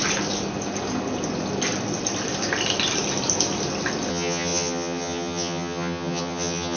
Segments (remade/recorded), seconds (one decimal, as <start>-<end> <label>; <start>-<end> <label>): 0.0-4.1 recorded; 4.1-6.8 remade